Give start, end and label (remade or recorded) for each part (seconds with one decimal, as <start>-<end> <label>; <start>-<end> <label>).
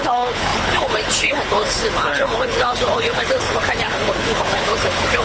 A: 0.0-5.2 remade